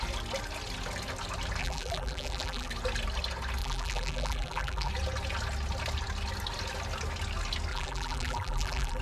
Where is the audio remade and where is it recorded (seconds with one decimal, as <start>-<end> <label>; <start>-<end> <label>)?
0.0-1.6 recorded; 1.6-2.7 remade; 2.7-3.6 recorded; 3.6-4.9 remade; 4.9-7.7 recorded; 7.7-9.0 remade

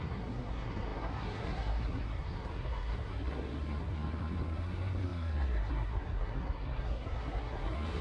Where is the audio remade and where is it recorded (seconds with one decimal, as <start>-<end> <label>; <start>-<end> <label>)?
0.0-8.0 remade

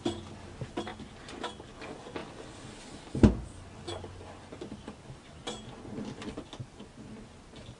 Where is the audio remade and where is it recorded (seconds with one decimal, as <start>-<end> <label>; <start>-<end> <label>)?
0.0-7.8 recorded

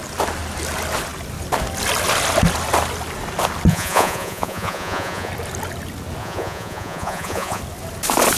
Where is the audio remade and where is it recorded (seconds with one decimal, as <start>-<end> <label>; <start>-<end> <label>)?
0.0-3.7 recorded; 3.7-5.3 remade; 5.3-6.2 recorded; 6.2-7.6 remade; 7.6-8.4 recorded

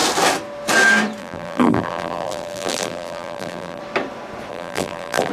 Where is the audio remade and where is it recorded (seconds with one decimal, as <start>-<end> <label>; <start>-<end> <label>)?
0.0-1.2 recorded; 1.2-3.8 remade; 3.8-4.5 recorded; 4.5-5.3 remade